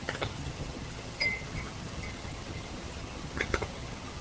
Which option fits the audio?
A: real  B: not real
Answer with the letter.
B